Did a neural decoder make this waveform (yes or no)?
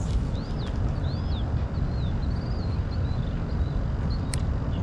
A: no